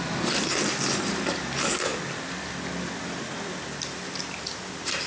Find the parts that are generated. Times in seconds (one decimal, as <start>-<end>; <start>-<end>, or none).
none